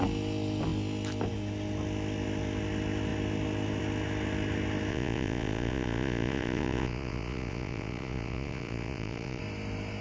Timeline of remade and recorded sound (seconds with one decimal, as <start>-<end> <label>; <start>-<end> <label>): 0.0-4.9 recorded; 4.9-9.4 remade; 9.4-10.0 recorded